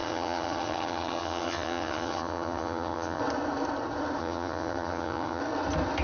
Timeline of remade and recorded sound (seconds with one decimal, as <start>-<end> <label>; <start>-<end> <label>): 0.0-3.2 remade; 3.2-4.2 recorded; 4.2-5.4 remade; 5.4-6.0 recorded